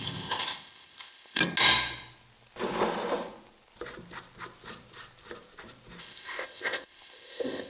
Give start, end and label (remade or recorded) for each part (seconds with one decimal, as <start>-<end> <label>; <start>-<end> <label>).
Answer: 0.0-1.4 remade; 1.4-6.0 recorded; 6.0-7.7 remade